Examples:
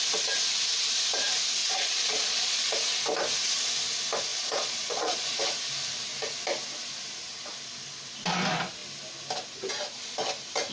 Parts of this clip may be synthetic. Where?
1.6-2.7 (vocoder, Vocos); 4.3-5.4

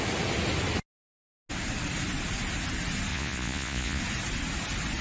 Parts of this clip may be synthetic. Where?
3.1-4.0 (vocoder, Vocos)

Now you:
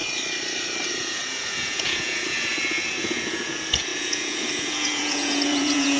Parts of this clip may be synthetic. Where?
0.9-6.0 (vocoder, Vocos)

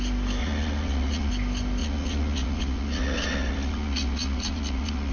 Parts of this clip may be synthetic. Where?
0.4-1.3 (vocoder, Vocos); 1.8-5.1

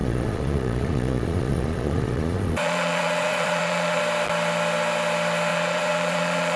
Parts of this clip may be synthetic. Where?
0.0-4.0 (vocoder, Vocos); 5.5-6.6

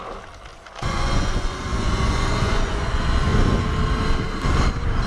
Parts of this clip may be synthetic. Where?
0.5-3.6 (vocoder, Vocos)

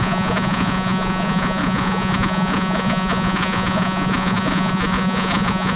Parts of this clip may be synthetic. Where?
0.0-5.8 (vocoder, Vocos)

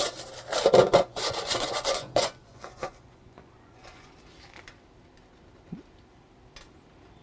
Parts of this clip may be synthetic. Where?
0.8-4.1 (vocoder, Vocos)